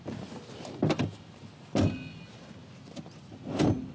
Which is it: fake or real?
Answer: real